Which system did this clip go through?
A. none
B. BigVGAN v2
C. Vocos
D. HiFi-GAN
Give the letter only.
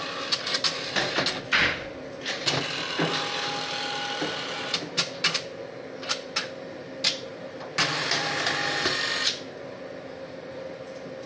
A